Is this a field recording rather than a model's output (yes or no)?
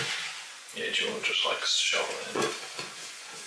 no